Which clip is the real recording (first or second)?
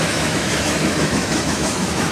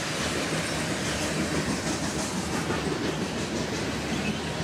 second